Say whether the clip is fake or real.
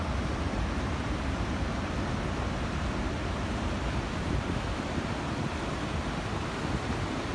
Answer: real